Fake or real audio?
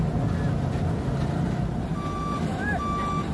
real